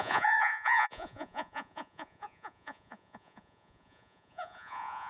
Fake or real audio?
fake